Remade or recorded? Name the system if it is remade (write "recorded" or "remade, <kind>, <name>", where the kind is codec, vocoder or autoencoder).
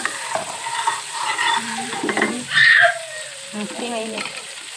remade, vocoder, BigVGAN v2